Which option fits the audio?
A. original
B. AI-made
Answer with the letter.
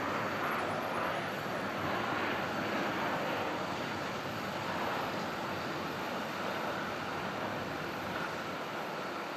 A